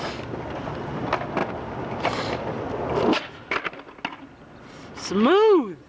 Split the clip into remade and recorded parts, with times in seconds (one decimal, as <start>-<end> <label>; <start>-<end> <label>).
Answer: 0.0-5.9 recorded